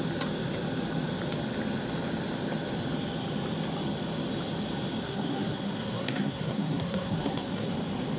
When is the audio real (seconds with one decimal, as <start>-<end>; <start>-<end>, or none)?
0.0-5.0; 7.7-8.2